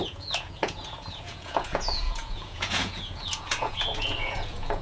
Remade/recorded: remade